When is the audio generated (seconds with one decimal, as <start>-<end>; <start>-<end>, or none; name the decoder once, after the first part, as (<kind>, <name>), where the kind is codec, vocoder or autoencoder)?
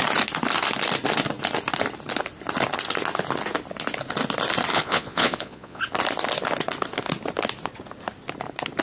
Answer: 4.7-5.8 (vocoder, Vocos)